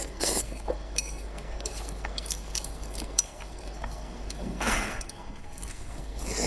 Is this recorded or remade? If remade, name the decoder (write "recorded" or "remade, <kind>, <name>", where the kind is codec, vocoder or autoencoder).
remade, codec, SNAC